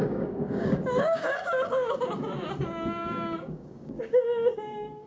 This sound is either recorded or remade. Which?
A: remade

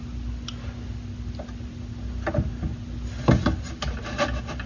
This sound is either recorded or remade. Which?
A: recorded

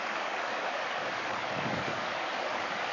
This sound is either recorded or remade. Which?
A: remade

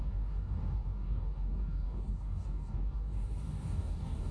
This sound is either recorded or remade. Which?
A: remade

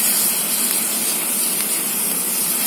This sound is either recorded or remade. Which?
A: recorded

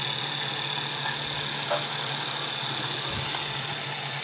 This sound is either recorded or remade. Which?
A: recorded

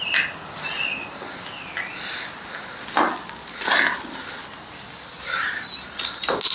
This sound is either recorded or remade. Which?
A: recorded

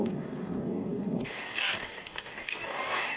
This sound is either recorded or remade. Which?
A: remade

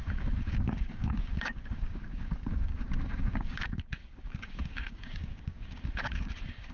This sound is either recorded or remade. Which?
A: remade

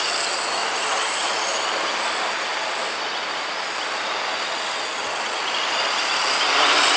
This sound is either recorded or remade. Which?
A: recorded